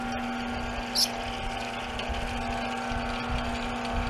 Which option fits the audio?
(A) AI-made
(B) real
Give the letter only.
B